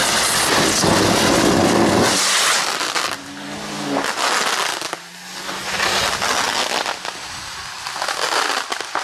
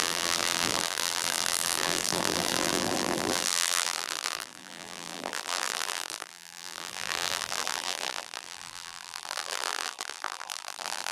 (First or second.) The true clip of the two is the first